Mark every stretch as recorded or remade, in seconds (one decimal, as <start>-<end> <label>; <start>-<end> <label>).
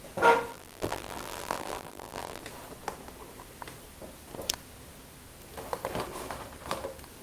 0.0-0.5 recorded; 0.5-2.4 remade; 2.4-7.2 recorded